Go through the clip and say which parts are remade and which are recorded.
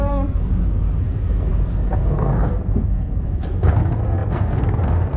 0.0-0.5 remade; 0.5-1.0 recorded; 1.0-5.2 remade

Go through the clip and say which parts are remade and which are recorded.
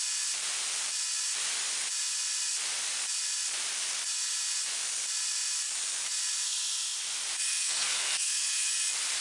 0.0-7.5 recorded; 7.5-8.7 remade; 8.7-9.2 recorded